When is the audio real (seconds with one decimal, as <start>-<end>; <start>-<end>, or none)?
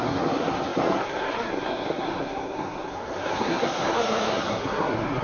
none